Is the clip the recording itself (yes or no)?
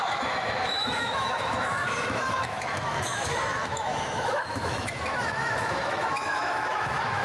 no